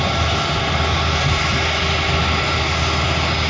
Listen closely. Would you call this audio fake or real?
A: real